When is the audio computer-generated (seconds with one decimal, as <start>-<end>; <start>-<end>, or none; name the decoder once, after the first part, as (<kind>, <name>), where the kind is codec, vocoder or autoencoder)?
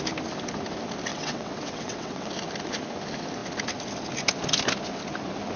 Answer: 1.1-2.3 (vocoder, WaveNeXt)